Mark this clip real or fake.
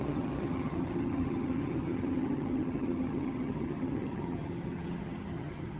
fake